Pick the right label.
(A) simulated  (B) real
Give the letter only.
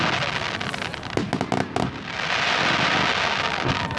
B